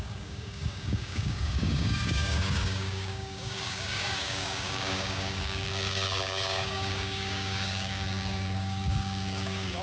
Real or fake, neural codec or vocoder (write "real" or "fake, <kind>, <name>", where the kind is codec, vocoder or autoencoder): fake, codec, DAC